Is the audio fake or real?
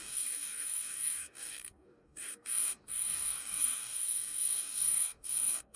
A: fake